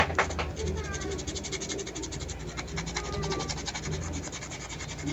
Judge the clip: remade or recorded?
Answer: recorded